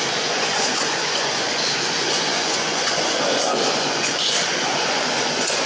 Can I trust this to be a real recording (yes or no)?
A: no